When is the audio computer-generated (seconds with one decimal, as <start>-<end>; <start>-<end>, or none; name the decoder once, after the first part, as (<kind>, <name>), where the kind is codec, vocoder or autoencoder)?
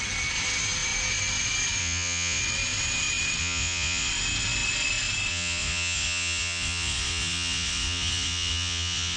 1.8-2.4 (vocoder, Vocos); 3.4-4.1; 5.3-9.2